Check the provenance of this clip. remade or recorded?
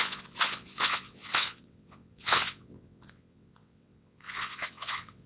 remade